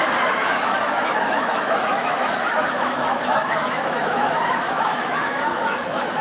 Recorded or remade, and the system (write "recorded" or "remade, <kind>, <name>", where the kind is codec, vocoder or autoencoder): remade, autoencoder, DAC-VAE